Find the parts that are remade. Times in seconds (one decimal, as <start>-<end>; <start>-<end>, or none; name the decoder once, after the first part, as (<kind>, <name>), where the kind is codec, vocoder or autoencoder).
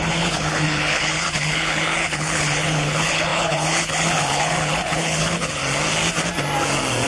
0.0-5.6 (codec, HILCodec)